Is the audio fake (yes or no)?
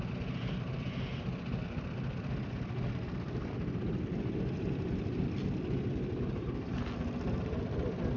no